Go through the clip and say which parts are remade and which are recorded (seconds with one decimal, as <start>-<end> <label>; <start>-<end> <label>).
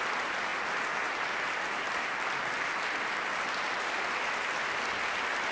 0.0-5.5 recorded